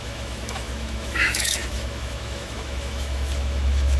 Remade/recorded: remade